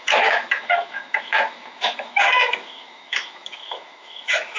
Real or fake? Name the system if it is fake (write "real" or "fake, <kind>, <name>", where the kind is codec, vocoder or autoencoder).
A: fake, autoencoder, DAC-VAE